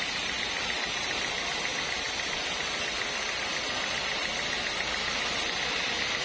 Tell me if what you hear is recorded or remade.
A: recorded